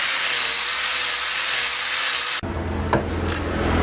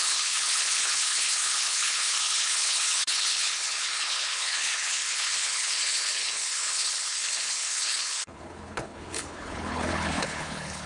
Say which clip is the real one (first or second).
first